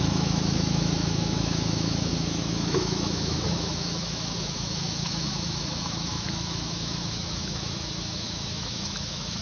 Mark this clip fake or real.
fake